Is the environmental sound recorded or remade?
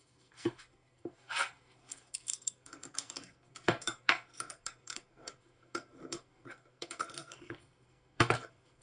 remade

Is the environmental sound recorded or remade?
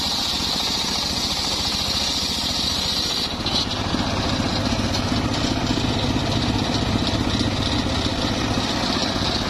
recorded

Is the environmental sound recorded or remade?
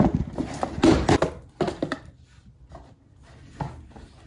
recorded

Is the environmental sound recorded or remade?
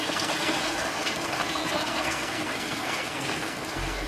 remade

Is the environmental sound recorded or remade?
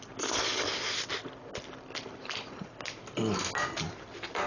recorded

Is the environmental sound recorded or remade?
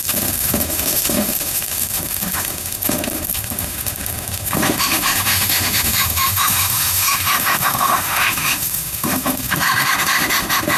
remade